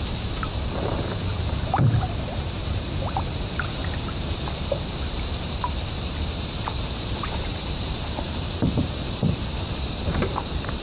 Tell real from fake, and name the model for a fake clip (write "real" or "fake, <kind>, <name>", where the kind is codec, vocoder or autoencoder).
fake, vocoder, BigVGAN v2